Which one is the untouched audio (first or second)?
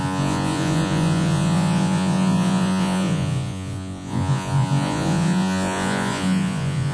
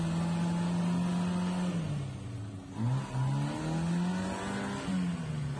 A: second